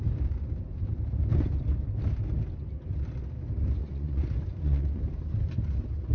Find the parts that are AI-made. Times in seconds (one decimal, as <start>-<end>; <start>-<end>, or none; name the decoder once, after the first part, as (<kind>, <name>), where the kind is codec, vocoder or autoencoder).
3.8-5.0 (vocoder, Vocos)